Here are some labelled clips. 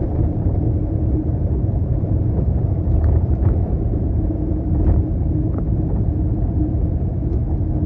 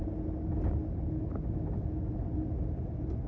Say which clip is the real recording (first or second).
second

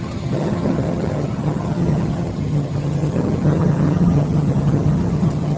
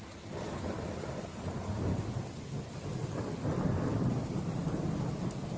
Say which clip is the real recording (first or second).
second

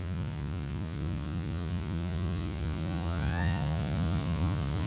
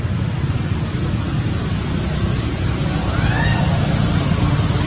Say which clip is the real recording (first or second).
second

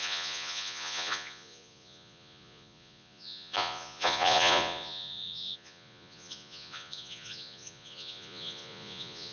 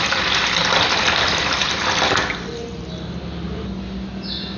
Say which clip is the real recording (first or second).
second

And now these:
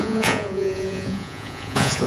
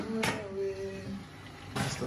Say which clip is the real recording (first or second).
second